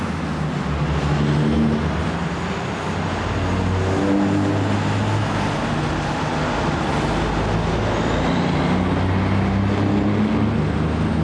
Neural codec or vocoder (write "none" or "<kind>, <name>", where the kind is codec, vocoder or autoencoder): none